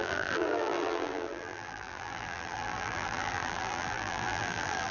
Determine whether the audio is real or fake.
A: fake